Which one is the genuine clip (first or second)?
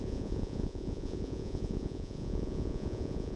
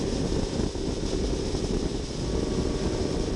second